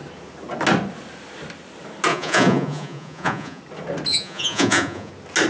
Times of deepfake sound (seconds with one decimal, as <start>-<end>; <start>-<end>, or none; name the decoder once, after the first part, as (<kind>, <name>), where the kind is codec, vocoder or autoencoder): 2.1-3.6 (vocoder, Vocos); 4.1-5.1